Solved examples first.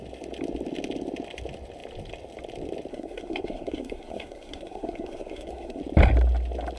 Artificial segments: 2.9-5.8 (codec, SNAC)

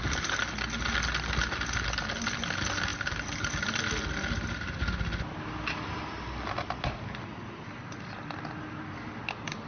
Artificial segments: none

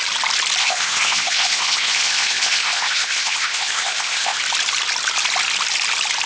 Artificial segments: 0.6-4.4 (codec, ZipCodec)

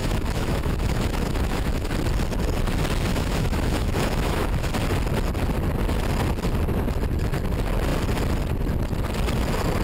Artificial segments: 0.0-1.9 (autoencoder, DAC-VAE); 3.1-4.7